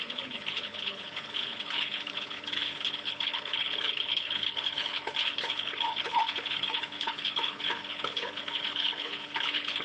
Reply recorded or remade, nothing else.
remade